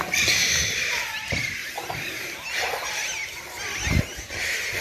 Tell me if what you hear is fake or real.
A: real